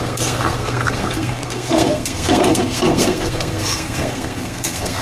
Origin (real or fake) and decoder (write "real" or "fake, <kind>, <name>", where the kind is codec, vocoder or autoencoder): fake, codec, SNAC